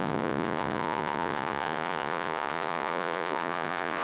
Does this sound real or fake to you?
fake